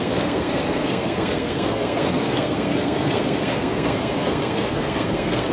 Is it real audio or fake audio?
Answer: fake